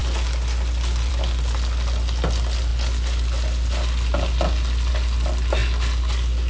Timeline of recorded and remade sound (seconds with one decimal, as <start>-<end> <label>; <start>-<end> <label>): 0.0-6.5 recorded